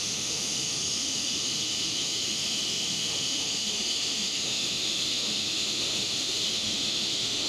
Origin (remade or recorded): remade